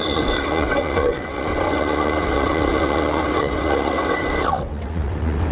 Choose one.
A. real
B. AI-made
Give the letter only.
B